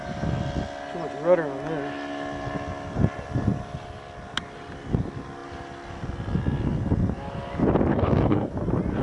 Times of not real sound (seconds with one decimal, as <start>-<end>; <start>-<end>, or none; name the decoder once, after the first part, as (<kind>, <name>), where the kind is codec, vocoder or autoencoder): 7.9-8.5 (codec, DAC)